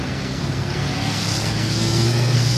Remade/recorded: remade